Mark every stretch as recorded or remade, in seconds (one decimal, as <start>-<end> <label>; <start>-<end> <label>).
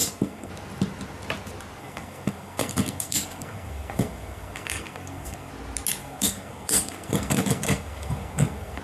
0.0-0.5 remade; 0.5-1.8 recorded; 1.8-5.5 remade; 5.5-6.0 recorded; 6.0-8.8 remade